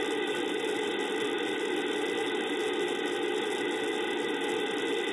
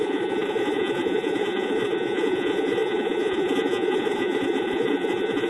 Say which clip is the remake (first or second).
second